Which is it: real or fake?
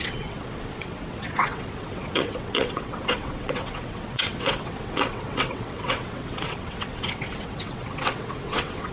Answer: fake